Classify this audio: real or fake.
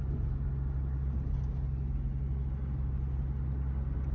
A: real